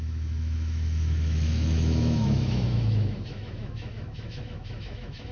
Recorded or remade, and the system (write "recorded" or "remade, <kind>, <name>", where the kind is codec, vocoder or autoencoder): remade, autoencoder, DAC-VAE